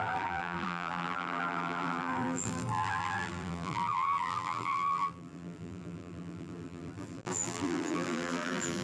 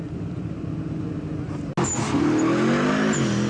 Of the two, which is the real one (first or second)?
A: second